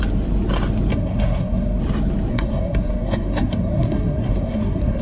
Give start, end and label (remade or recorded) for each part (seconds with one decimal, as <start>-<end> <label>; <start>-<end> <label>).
0.0-0.9 recorded; 0.9-1.8 remade; 1.8-2.3 recorded; 2.3-5.0 remade